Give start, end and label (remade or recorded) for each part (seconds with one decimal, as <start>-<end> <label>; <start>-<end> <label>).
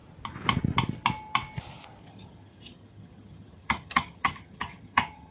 0.0-2.0 recorded; 2.0-5.3 remade